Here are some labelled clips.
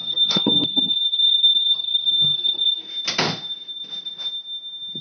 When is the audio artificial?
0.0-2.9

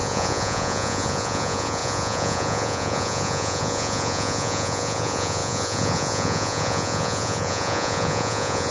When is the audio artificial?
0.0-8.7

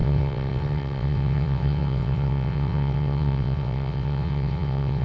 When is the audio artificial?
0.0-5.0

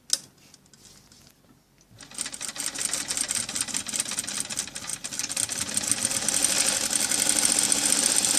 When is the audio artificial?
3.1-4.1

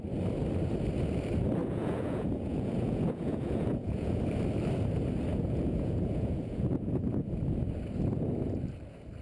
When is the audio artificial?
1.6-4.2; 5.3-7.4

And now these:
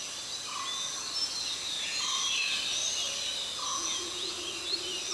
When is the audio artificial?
3.7-4.3